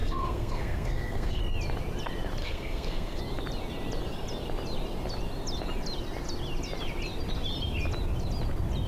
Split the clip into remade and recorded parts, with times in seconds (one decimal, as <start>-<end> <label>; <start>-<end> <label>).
0.0-1.4 remade; 1.4-2.4 recorded; 2.4-3.2 remade; 3.2-8.9 recorded